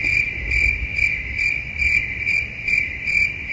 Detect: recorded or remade recorded